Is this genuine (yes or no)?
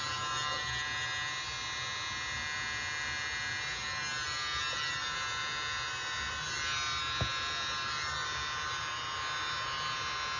yes